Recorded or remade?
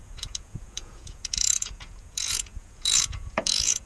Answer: remade